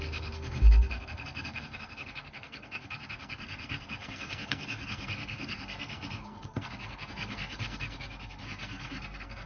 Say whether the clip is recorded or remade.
remade